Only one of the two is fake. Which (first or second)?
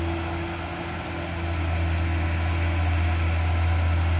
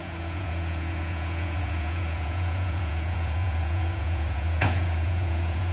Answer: second